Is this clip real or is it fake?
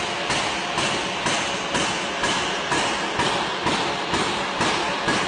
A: real